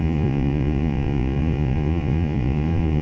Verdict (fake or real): fake